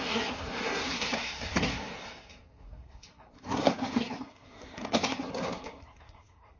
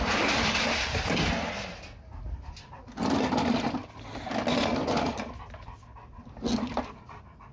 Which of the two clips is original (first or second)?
second